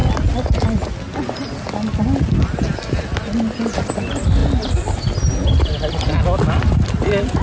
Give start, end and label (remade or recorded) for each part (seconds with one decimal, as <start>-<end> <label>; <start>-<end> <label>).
0.0-7.4 recorded